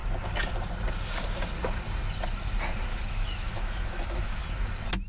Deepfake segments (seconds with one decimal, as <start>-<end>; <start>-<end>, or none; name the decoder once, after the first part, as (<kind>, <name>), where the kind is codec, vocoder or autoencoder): 3.1-4.4 (autoencoder, DAC-VAE)